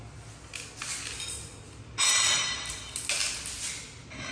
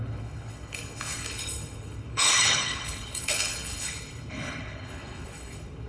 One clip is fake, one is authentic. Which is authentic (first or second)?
first